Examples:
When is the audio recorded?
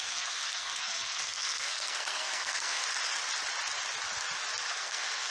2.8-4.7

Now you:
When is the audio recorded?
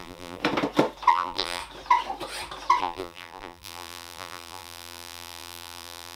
0.4-1.1; 1.6-2.8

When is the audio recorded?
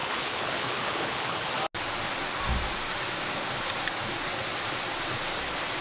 1.5-5.8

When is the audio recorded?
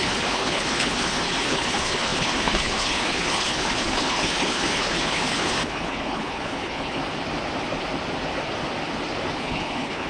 7.0-9.4